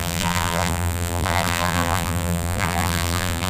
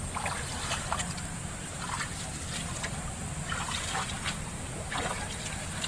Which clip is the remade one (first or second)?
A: first